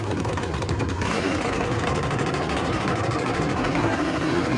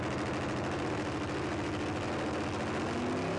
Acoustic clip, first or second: second